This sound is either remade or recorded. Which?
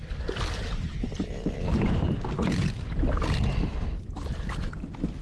recorded